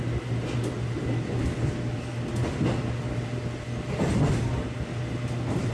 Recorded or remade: recorded